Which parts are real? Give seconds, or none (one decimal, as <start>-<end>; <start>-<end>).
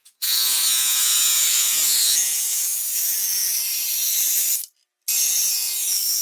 3.1-6.2